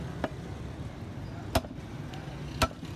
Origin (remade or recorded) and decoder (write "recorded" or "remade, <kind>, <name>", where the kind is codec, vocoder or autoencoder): recorded